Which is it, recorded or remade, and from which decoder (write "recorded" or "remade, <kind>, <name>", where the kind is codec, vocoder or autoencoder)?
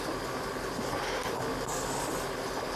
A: recorded